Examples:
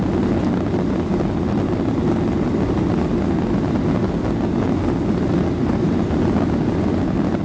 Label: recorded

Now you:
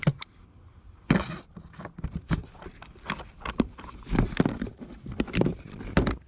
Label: recorded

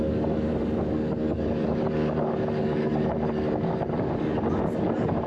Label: remade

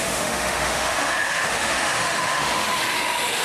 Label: remade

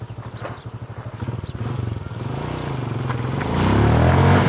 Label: recorded